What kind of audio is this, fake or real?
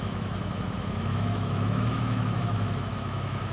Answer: fake